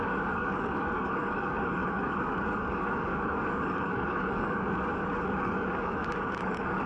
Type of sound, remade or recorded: remade